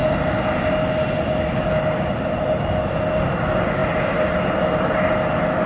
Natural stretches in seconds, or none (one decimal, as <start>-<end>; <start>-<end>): 0.0-5.7